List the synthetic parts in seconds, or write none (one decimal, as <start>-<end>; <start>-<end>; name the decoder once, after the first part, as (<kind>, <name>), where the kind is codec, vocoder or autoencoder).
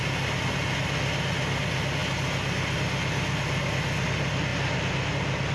none